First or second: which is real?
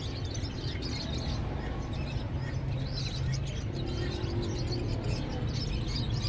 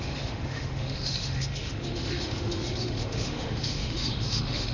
first